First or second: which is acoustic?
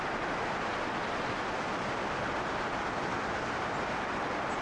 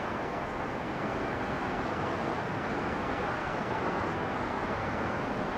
first